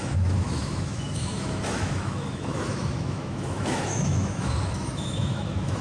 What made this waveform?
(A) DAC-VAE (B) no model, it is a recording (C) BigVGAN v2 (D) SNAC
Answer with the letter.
A